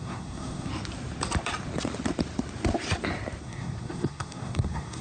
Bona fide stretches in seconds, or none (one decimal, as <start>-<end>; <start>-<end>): 0.7-3.4